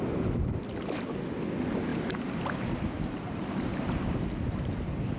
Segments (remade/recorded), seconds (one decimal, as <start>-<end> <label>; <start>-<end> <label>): 0.0-1.9 recorded; 1.9-5.2 remade